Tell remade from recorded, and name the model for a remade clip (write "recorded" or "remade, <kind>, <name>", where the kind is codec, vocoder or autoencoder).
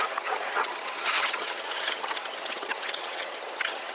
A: remade, vocoder, HiFi-GAN